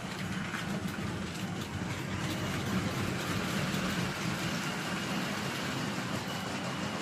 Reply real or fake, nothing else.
real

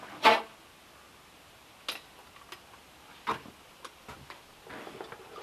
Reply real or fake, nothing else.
real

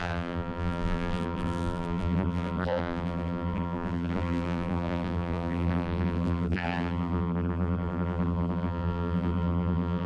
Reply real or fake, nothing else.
fake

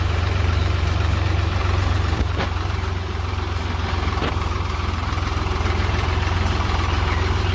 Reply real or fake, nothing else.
fake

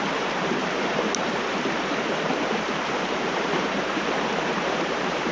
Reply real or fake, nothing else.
fake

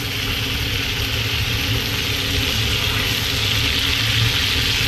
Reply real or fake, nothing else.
real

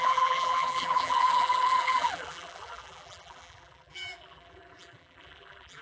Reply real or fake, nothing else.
fake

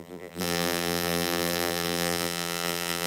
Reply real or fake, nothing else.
fake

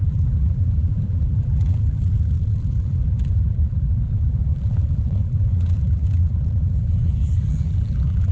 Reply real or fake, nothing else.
fake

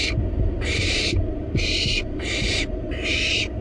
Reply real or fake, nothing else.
fake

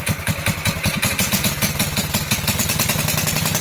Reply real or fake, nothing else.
real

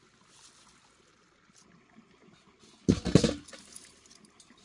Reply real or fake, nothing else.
real